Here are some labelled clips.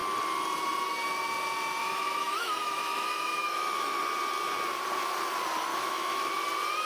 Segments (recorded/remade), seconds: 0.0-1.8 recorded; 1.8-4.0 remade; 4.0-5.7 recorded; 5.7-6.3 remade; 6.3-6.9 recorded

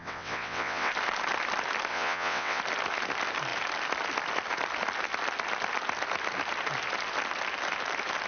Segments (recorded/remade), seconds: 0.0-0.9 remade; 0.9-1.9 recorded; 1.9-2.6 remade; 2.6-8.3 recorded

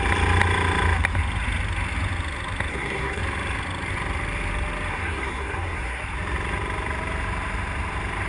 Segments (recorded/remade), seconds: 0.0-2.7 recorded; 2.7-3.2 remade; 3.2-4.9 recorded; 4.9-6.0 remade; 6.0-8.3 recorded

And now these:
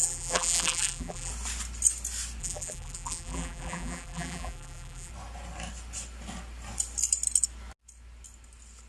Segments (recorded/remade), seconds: 0.0-1.3 remade; 1.3-2.4 recorded; 2.4-5.1 remade; 5.1-8.9 recorded

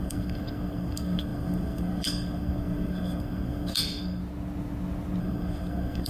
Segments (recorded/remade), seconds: 0.0-4.2 remade; 4.2-5.2 recorded; 5.2-6.1 remade